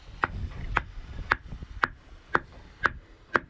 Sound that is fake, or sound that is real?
real